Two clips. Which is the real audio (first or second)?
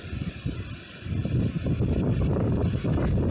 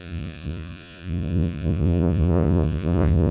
first